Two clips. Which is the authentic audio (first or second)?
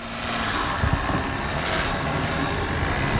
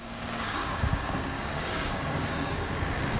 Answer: first